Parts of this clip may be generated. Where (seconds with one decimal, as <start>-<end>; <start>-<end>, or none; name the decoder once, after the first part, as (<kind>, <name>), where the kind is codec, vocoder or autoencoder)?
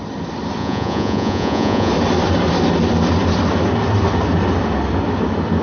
0.6-1.9 (vocoder, Vocos)